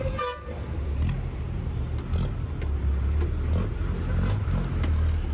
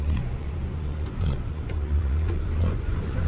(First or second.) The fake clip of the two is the second